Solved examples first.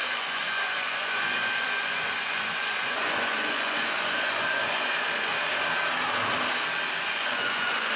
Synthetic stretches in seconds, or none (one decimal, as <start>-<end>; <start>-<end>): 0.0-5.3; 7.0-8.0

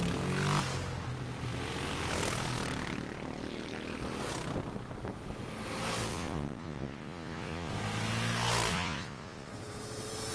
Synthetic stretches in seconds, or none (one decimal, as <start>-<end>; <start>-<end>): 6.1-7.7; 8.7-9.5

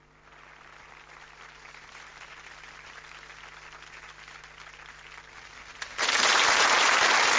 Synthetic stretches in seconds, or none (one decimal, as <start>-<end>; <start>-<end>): none

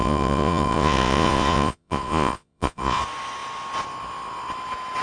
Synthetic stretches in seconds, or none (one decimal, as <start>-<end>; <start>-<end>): 0.0-3.0

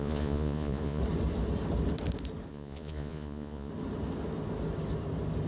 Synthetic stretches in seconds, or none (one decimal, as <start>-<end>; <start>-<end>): 0.0-1.0; 2.5-3.7

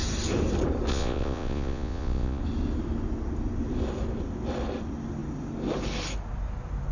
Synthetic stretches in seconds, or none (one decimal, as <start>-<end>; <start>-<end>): 0.9-2.4

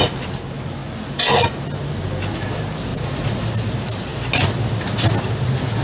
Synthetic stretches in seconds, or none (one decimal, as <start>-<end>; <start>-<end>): 2.9-3.4